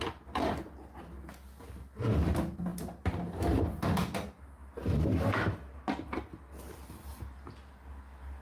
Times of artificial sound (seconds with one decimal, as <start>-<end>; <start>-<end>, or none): none